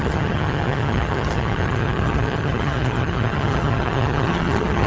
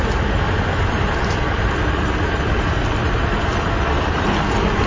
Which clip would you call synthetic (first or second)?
first